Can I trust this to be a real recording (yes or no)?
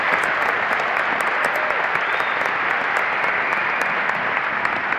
yes